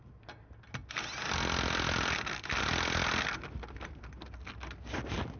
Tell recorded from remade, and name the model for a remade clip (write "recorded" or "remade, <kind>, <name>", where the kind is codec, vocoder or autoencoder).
recorded